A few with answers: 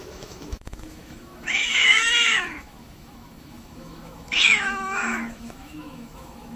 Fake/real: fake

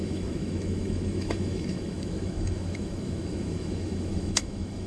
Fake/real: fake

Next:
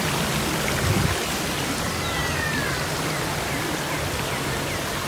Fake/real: real